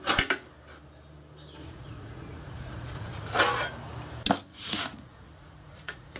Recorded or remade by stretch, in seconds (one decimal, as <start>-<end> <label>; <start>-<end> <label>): 0.0-1.6 recorded; 1.6-3.4 remade; 3.4-4.5 recorded; 4.5-6.2 remade